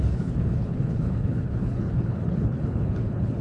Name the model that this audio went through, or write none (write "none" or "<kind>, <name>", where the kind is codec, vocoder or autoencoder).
codec, HILCodec